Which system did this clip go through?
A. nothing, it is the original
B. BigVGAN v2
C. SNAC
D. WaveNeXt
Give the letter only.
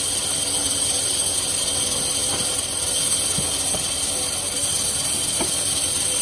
A